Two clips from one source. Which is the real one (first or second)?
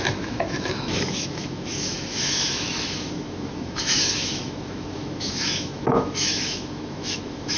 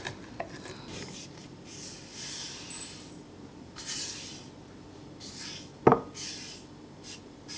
second